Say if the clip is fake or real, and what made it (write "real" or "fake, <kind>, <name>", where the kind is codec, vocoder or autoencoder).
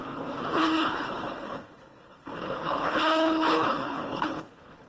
fake, codec, HILCodec